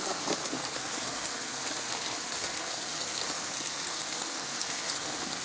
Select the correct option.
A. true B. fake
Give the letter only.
B